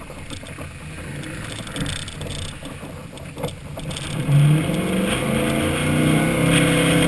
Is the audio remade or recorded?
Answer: recorded